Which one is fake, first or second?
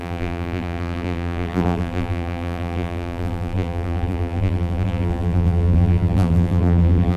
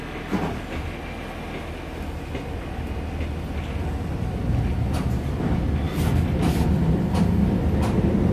first